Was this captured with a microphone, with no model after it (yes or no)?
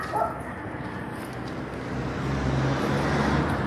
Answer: yes